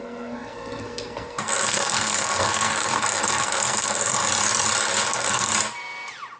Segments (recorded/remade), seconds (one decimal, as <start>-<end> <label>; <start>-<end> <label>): 0.0-4.2 remade; 4.2-5.1 recorded; 5.1-5.5 remade; 5.5-6.4 recorded